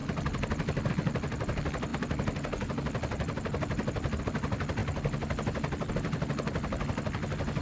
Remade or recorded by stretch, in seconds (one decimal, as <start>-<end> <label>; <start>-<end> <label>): 0.0-7.6 recorded